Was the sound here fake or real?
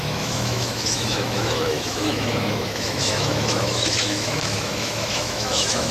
fake